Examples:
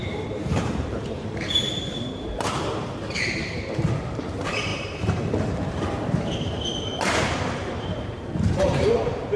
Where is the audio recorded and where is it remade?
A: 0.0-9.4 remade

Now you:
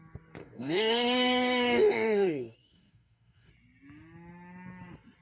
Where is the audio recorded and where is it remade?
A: 0.0-0.4 recorded; 0.4-3.5 remade; 3.5-5.2 recorded

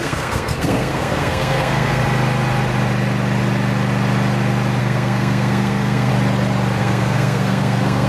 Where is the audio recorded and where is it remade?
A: 0.0-2.0 remade; 2.0-4.8 recorded; 4.8-6.1 remade; 6.1-6.8 recorded; 6.8-8.1 remade

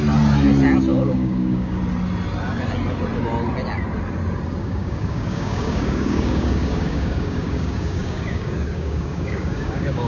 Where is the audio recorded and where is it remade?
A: 0.0-0.9 recorded; 0.9-1.8 remade; 1.8-4.6 recorded; 4.6-10.1 remade

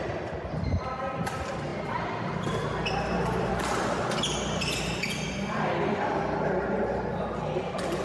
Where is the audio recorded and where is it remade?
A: 0.0-8.0 recorded

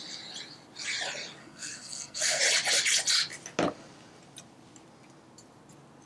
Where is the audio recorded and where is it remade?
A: 0.0-1.4 recorded; 1.4-2.4 remade; 2.4-6.1 recorded

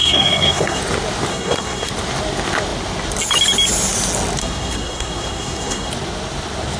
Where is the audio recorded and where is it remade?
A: 0.0-0.8 remade; 0.8-1.3 recorded; 1.3-1.9 remade; 1.9-4.4 recorded; 4.4-5.9 remade; 5.9-6.8 recorded